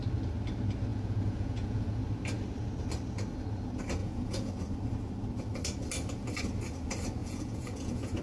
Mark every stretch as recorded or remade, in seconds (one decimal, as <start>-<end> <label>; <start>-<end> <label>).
0.0-0.9 recorded; 0.9-2.0 remade; 2.0-4.0 recorded; 4.0-4.5 remade; 4.5-7.2 recorded; 7.2-8.2 remade